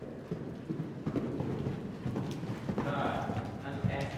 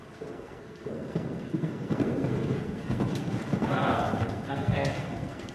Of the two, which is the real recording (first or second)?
first